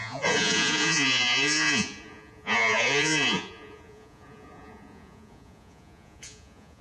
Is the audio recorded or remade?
remade